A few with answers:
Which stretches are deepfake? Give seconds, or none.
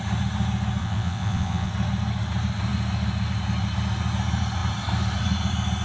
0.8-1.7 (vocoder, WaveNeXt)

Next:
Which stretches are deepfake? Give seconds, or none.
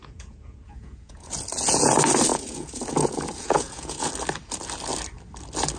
0.0-1.9 (vocoder, Vocos); 2.3-4.1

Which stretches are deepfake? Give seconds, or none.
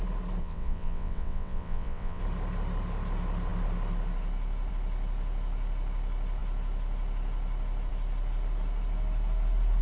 0.4-2.2 (vocoder, WaveNeXt)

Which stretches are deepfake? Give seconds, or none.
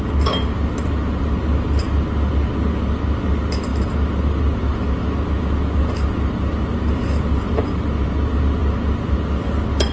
none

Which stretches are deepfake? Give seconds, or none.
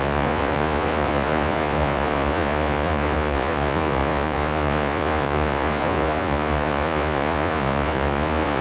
0.0-8.6 (vocoder, Vocos)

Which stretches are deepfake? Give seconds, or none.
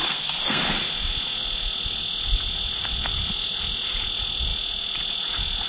0.0-0.6 (codec, SNAC)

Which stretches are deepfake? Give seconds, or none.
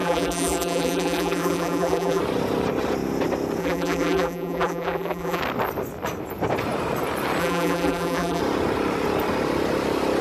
0.0-2.2 (vocoder, BigVGAN v2); 3.6-5.4; 7.4-8.4